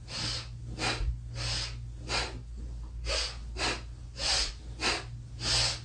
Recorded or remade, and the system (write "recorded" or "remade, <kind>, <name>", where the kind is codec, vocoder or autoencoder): recorded